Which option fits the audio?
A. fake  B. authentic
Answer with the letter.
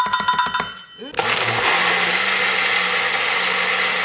B